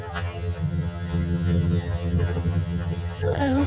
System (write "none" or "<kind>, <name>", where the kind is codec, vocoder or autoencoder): vocoder, HiFi-GAN